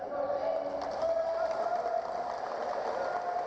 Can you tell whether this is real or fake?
real